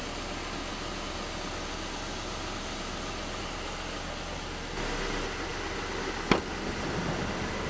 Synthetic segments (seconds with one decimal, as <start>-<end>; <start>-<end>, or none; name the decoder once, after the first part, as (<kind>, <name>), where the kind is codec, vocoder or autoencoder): none